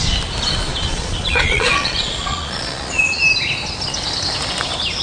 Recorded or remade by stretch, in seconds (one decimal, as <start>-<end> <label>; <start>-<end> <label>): 0.0-0.7 recorded; 0.7-3.2 remade; 3.2-5.0 recorded